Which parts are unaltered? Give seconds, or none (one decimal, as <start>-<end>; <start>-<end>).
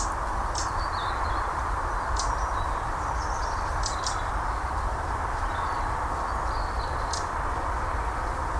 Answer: 0.0-1.0; 4.3-8.6